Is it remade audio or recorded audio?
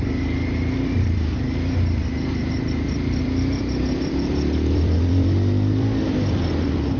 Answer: remade